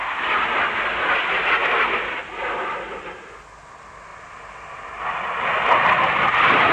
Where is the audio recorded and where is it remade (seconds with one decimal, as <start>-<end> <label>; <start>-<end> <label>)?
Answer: 0.0-1.6 recorded; 1.6-2.2 remade; 2.2-6.7 recorded